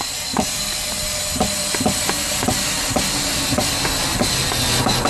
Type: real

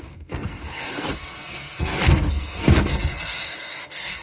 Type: fake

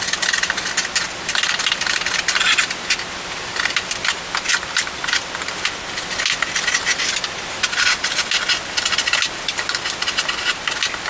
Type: real